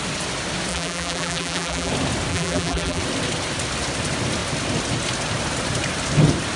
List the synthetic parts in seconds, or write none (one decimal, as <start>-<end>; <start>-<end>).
0.7-1.9; 2.3-3.0